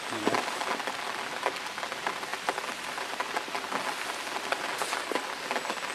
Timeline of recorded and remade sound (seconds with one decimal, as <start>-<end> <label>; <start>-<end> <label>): 0.0-5.9 recorded